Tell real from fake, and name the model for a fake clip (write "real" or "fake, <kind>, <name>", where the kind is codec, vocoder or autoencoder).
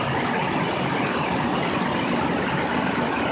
real